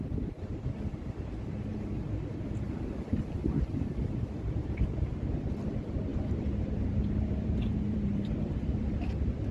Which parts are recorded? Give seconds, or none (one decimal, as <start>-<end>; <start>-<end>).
0.0-1.7; 2.9-4.6; 5.3-6.1; 8.6-9.5